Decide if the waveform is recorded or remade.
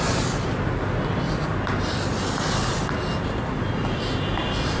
recorded